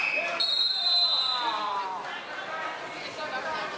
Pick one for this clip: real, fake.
real